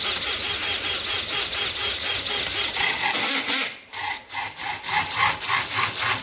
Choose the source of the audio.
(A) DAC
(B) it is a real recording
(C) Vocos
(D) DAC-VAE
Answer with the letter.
B